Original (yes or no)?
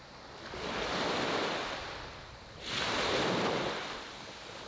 yes